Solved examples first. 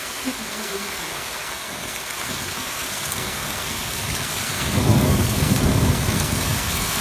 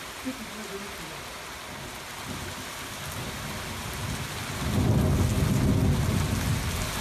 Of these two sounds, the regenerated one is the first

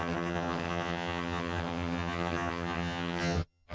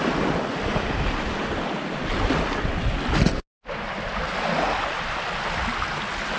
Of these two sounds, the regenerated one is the first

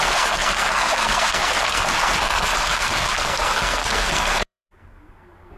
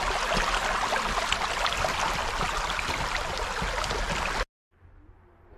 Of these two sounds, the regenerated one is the first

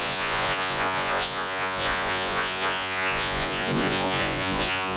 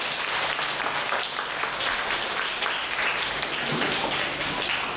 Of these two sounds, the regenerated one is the first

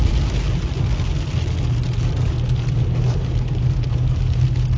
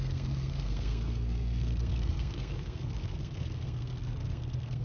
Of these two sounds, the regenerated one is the second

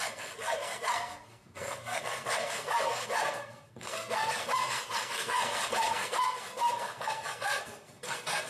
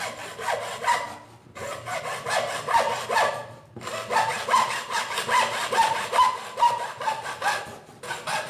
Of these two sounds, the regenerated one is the first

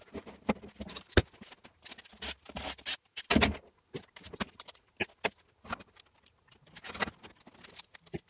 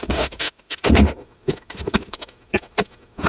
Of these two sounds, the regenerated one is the second